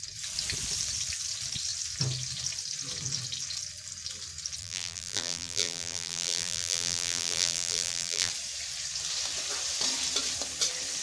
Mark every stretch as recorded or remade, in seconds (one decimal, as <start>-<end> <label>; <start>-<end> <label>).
0.0-4.6 recorded; 4.6-8.3 remade; 8.3-11.0 recorded